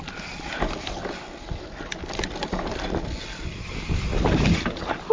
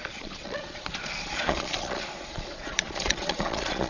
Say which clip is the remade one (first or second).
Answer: second